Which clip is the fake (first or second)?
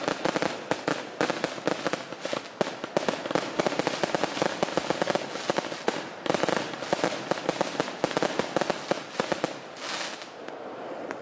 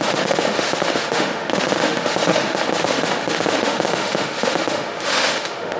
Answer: second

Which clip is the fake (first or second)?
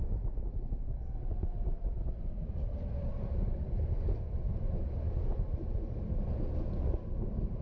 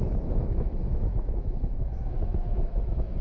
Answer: second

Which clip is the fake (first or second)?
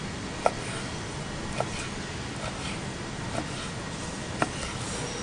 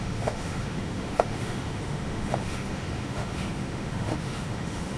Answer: second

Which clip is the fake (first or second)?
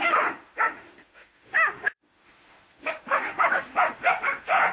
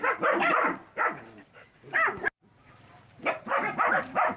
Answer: first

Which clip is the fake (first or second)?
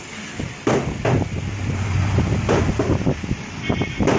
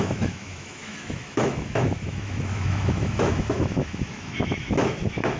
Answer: second